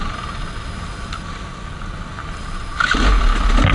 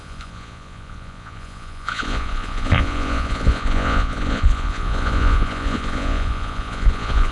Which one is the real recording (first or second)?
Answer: first